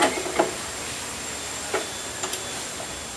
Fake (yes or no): no